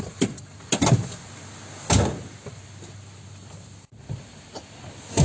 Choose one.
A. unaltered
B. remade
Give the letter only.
A